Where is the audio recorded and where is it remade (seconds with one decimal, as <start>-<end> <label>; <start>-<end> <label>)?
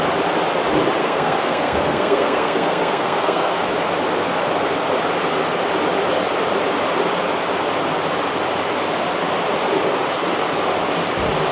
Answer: 0.0-1.0 recorded; 1.0-3.6 remade; 3.6-11.5 recorded